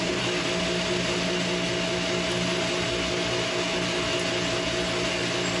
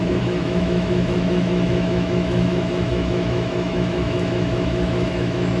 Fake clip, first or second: second